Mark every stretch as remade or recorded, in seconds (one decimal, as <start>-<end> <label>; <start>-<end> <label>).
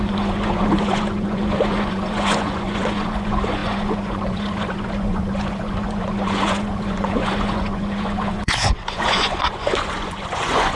0.0-10.8 remade